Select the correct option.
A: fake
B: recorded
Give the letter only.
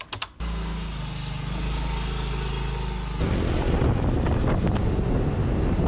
B